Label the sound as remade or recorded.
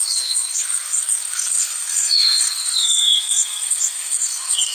remade